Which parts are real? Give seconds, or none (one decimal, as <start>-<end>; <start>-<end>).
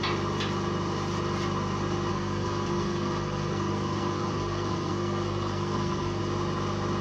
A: 0.0-2.1; 6.2-7.0